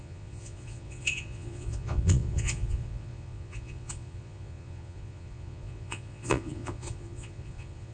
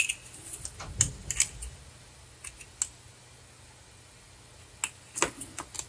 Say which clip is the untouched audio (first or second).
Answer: second